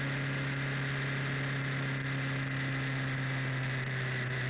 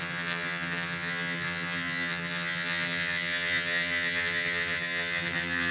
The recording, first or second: first